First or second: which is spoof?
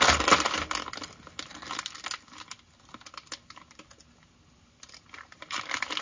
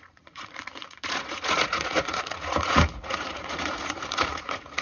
second